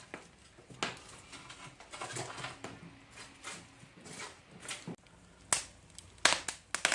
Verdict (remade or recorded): recorded